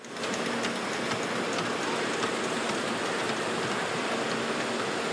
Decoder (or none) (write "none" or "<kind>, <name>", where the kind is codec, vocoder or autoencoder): none